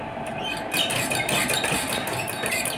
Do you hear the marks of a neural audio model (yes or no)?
no